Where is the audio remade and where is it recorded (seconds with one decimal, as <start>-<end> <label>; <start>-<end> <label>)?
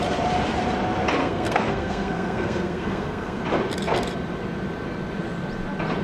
0.0-1.2 recorded; 1.2-3.4 remade; 3.4-6.0 recorded